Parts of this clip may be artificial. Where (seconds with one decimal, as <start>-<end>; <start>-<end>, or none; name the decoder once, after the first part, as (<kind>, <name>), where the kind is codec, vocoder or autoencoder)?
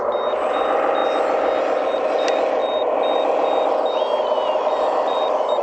none